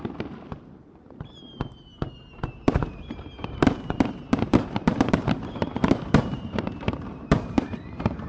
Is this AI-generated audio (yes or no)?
yes